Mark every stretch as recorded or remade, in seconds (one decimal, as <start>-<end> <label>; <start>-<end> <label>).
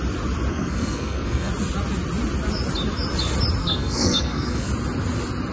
0.0-0.5 recorded; 0.5-1.5 remade; 1.5-3.6 recorded; 3.6-4.7 remade; 4.7-5.5 recorded